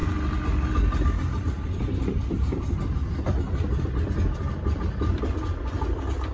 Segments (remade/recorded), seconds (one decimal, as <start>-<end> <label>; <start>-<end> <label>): 0.0-6.3 recorded